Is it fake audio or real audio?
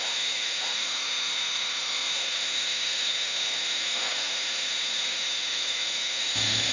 fake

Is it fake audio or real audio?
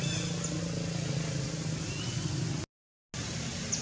real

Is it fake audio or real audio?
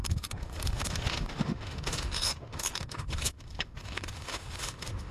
fake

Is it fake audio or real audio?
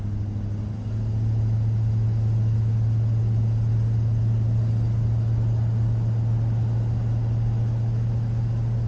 real